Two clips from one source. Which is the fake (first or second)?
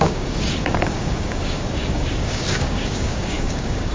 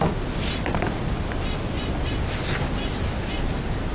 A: first